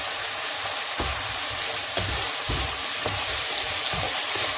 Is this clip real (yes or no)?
no